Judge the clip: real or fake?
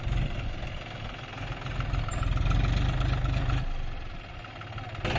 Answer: real